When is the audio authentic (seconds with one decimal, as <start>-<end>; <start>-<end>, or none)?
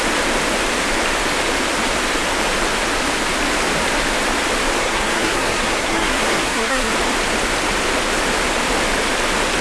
0.0-4.8; 6.9-9.6